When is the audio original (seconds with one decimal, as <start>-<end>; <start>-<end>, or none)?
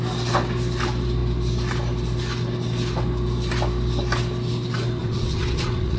0.0-5.0